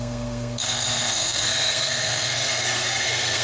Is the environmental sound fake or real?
fake